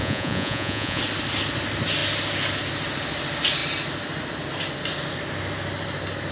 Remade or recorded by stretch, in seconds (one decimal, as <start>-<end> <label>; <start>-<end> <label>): 0.0-1.0 remade; 1.0-6.3 recorded